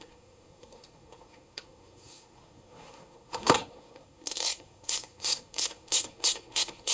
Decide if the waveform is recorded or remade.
remade